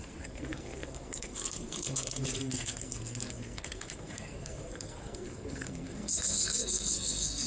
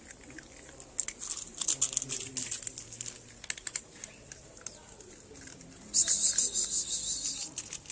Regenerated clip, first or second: first